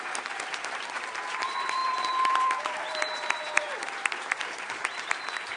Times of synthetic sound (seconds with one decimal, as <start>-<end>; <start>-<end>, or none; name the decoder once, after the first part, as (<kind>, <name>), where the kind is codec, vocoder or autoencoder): 0.0-5.6 (vocoder, BigVGAN v2)